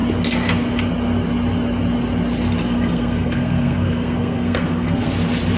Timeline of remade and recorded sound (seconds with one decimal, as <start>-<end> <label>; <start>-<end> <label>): 0.0-2.6 recorded; 2.6-5.1 remade; 5.1-5.6 recorded